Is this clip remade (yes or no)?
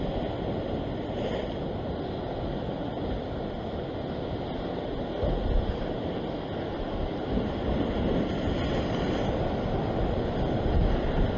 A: no